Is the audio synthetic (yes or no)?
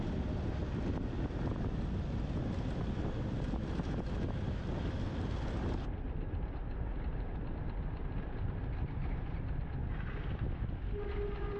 no